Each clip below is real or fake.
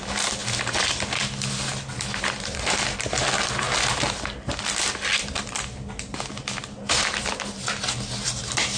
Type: real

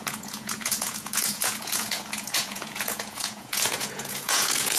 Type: fake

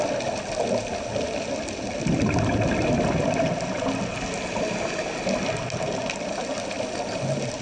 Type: real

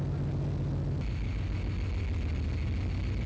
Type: real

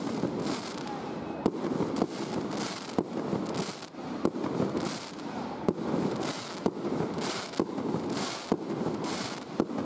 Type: real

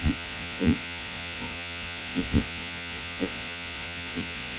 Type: fake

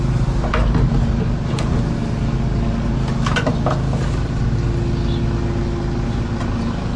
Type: real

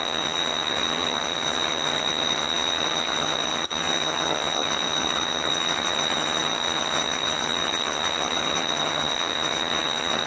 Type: fake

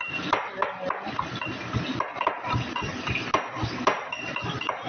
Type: real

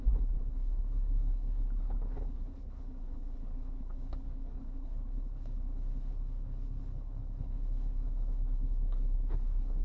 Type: fake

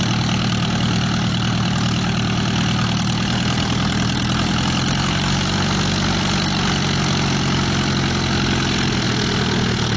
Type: real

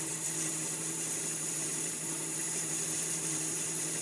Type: fake